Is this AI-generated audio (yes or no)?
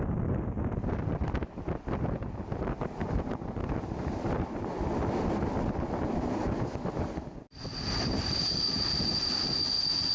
no